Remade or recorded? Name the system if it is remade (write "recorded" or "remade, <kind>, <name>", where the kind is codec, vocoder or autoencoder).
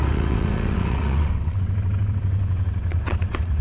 remade, vocoder, WaveNeXt